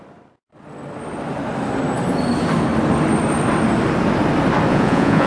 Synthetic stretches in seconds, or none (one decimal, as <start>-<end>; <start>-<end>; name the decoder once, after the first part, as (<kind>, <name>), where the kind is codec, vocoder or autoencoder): 4.7-5.3 (vocoder, Vocos)